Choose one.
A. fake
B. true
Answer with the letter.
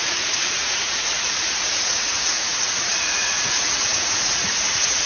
A